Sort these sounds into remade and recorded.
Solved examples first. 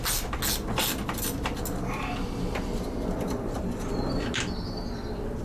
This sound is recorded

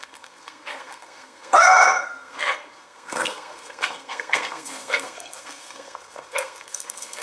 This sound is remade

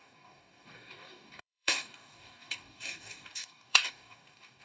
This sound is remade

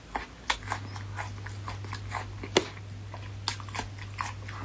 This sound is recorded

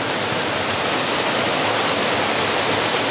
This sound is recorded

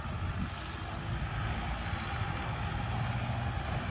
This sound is recorded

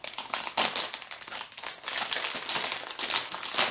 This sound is recorded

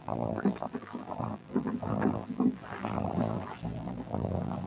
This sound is remade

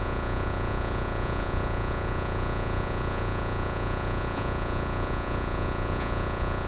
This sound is remade